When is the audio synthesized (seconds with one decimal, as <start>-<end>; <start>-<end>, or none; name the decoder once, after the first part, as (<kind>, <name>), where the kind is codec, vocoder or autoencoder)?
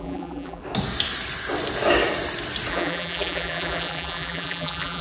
0.0-0.6 (vocoder, BigVGAN v2); 2.7-5.0